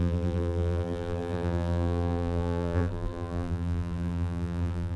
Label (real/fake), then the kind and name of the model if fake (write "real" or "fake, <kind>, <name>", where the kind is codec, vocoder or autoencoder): fake, vocoder, BigVGAN v2